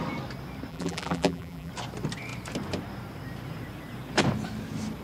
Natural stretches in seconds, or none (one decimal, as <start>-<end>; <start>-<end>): 0.0-0.7; 1.7-5.0